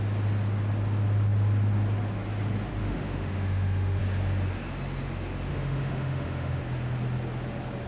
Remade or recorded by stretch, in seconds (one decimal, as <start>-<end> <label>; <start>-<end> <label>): 0.0-2.8 recorded; 2.8-4.0 remade; 4.0-5.5 recorded; 5.5-6.6 remade; 6.6-7.9 recorded